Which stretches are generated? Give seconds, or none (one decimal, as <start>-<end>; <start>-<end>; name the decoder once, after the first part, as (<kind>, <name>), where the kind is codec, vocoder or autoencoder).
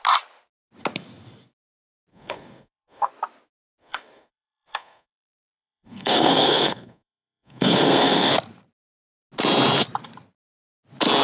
2.1-3.1 (codec, SNAC); 3.8-8.3